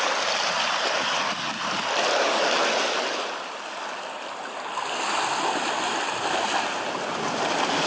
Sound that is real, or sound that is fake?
real